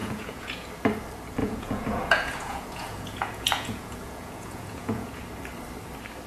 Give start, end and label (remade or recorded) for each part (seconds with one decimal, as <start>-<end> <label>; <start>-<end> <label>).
0.0-0.7 remade; 0.7-1.4 recorded; 1.4-5.2 remade; 5.2-6.3 recorded

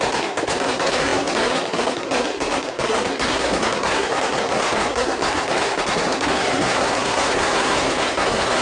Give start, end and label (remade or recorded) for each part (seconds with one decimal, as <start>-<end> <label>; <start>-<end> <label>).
0.0-8.6 remade

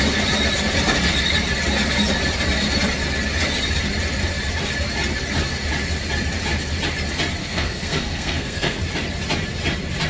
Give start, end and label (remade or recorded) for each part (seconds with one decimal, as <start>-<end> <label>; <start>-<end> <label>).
0.0-7.4 recorded; 7.4-8.8 remade; 8.8-10.1 recorded